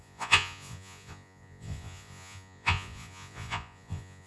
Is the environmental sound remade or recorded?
remade